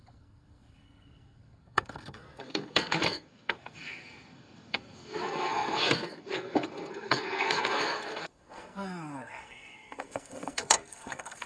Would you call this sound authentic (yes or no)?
no